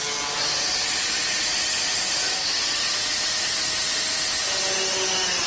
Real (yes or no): yes